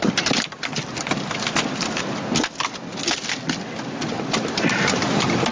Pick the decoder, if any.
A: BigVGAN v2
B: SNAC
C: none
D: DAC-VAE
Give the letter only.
C